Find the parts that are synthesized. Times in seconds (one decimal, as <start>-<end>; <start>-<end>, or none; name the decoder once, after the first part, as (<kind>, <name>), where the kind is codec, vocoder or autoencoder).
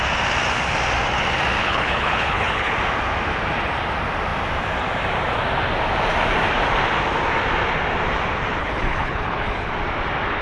1.6-2.7 (codec, HILCodec); 8.6-9.7